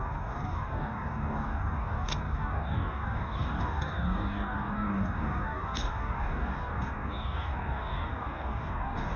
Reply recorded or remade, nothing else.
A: remade